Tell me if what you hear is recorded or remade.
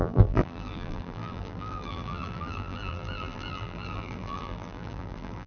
remade